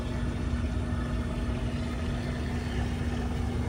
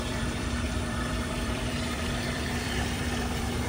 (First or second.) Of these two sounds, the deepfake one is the second